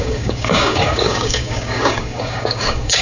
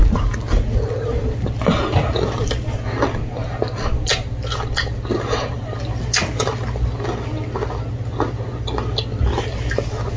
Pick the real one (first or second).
second